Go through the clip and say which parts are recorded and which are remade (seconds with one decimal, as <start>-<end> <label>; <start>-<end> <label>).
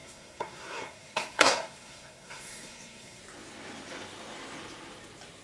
0.0-3.2 remade; 3.2-5.4 recorded